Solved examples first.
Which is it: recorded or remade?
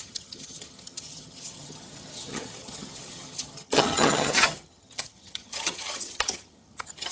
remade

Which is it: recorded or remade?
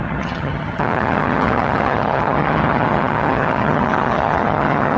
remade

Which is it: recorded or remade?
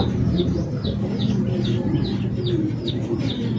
recorded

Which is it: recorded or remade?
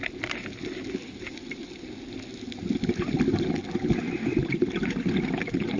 recorded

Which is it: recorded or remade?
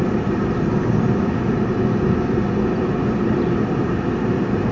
recorded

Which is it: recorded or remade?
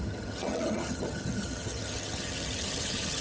remade